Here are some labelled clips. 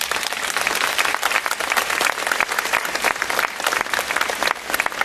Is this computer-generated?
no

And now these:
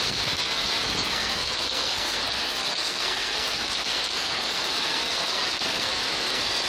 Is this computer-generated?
yes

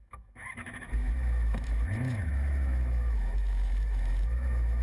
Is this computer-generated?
yes